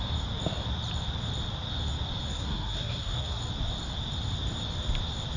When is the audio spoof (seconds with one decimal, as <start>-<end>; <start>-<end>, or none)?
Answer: 2.3-3.4

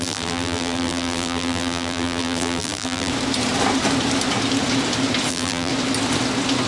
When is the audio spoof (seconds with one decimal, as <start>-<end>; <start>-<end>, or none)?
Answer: 0.0-3.1; 5.3-5.7

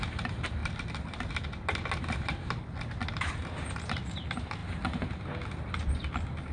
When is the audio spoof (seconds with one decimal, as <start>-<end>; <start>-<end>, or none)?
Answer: none

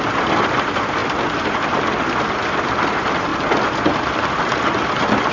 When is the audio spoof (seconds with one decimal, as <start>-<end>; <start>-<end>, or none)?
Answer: 0.0-1.0; 2.5-3.3

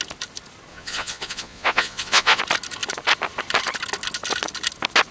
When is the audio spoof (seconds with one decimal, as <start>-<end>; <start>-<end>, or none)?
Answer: 0.7-2.4

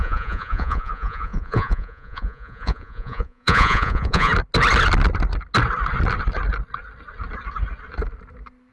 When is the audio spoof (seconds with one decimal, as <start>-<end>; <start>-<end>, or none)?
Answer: 0.0-4.3

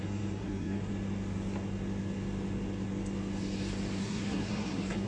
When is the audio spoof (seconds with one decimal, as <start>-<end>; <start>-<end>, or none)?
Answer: 0.0-0.9; 4.0-5.1